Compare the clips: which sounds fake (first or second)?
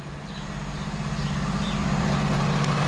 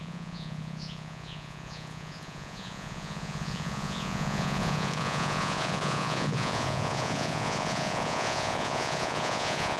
second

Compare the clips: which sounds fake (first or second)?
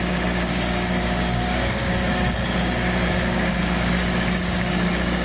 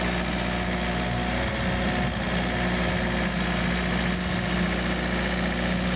first